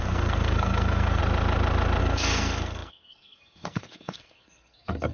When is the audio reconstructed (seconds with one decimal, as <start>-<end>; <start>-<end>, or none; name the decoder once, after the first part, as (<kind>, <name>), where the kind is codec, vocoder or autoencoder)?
0.0-1.2 (codec, SNAC); 2.0-5.1